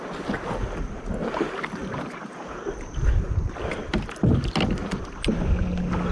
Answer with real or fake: real